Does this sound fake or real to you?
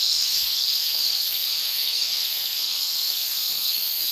fake